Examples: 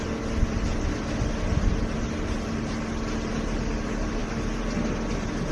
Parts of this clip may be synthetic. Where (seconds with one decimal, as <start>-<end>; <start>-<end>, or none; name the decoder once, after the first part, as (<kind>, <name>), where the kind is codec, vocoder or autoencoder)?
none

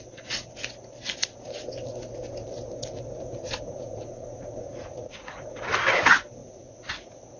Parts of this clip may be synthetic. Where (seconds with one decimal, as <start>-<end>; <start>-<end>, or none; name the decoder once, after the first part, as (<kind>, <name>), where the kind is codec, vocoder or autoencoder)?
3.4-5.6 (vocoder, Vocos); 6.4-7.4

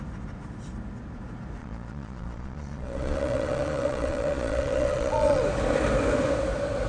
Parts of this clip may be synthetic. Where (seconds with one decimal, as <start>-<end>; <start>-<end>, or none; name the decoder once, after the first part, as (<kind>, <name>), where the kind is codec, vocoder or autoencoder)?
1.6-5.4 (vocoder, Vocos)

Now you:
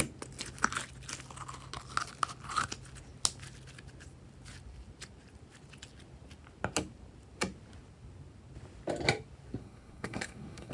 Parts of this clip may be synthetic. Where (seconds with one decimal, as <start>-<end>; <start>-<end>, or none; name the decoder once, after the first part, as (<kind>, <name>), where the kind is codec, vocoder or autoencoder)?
9.6-10.7 (codec, SNAC)

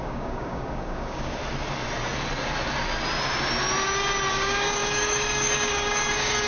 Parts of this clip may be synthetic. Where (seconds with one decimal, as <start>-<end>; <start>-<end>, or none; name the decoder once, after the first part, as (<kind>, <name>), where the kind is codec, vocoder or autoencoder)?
0.0-1.4 (codec, DAC); 4.3-6.5

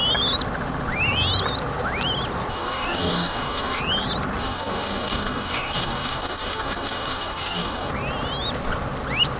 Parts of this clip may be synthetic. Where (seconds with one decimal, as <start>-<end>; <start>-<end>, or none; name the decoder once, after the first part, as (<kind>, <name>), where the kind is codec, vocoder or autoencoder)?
2.5-3.8 (codec, DAC); 4.4-7.9